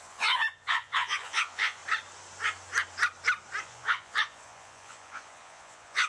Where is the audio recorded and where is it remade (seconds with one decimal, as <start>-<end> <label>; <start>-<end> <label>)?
0.0-1.8 remade; 1.8-3.6 recorded; 3.6-6.1 remade